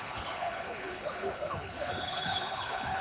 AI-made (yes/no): yes